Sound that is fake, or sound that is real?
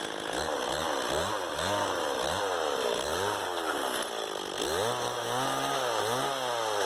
real